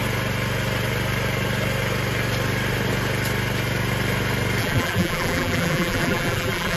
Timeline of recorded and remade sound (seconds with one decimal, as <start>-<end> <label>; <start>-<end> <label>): 0.0-4.6 recorded; 4.6-6.8 remade